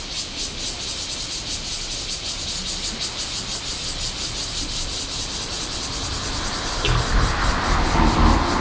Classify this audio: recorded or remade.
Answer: recorded